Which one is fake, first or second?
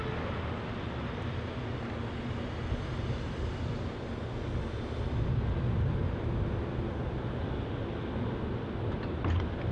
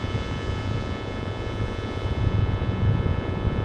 second